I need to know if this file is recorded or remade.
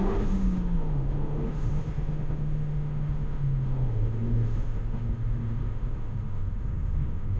remade